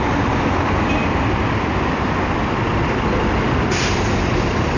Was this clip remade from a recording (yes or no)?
no